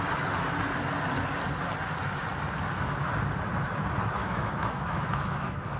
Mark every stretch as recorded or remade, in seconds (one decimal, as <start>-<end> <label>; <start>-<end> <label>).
0.0-4.2 recorded; 4.2-5.8 remade